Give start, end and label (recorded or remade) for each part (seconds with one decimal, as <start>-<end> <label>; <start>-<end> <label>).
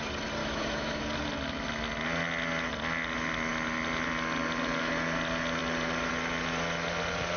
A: 0.0-0.4 recorded; 0.4-1.0 remade; 1.0-7.4 recorded